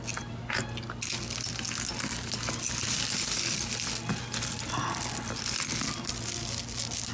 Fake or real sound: real